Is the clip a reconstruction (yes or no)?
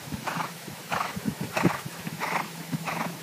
yes